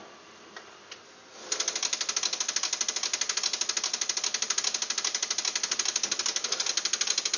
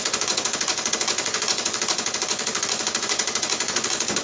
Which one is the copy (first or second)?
second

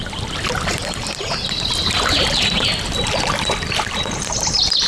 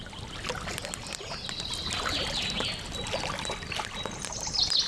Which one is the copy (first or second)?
first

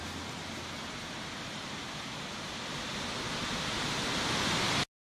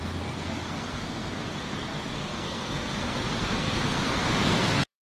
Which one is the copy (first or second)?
second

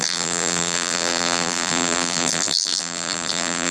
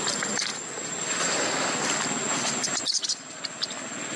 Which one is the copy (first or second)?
first